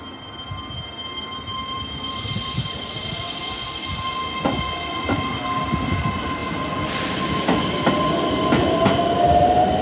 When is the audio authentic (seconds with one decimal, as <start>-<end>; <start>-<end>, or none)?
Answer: 0.0-1.5; 3.4-9.8